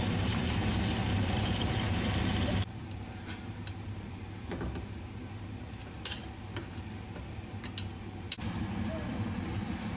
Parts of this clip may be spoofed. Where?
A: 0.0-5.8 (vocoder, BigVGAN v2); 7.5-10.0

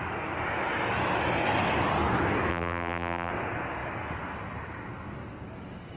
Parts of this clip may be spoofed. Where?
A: 2.5-3.3 (vocoder, BigVGAN v2)

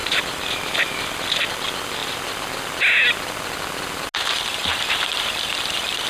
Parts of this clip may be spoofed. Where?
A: 0.0-0.9 (vocoder, BigVGAN v2)

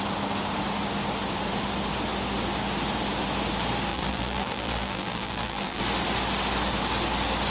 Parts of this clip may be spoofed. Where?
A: 3.9-5.8 (vocoder, BigVGAN v2)

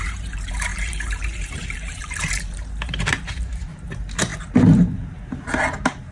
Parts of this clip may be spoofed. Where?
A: 0.0-6.1 (vocoder, BigVGAN v2)

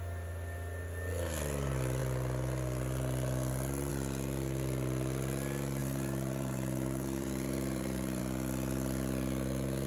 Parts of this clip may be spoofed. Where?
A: 5.8-8.2 (vocoder, BigVGAN v2)